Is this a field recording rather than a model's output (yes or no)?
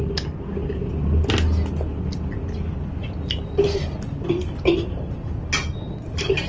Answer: yes